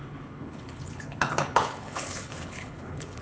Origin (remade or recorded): remade